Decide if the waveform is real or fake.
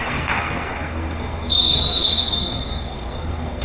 fake